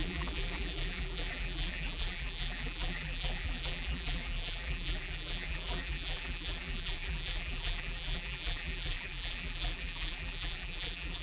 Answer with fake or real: fake